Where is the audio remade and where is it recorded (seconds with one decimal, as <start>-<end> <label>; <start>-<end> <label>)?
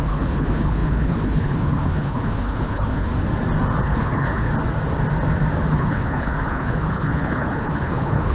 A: 0.0-3.1 remade; 3.1-3.8 recorded; 3.8-4.5 remade; 4.5-5.7 recorded; 5.7-8.3 remade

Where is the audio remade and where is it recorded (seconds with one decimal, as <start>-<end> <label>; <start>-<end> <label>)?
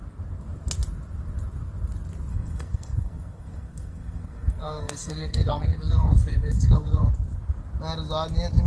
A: 0.0-2.3 recorded; 2.3-7.1 remade; 7.1-8.7 recorded